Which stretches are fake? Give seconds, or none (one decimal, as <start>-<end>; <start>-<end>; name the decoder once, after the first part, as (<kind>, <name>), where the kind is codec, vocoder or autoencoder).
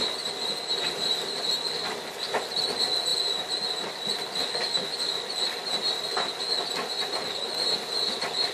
none